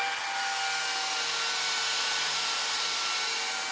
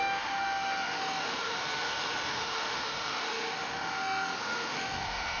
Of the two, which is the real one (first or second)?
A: first